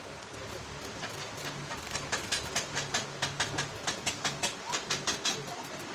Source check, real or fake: real